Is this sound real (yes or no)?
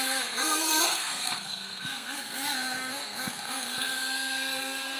no